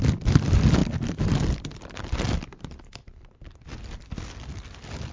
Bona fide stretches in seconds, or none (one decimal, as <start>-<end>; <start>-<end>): 0.0-5.1